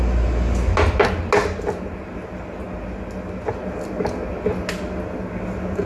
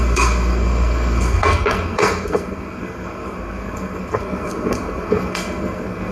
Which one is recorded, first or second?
first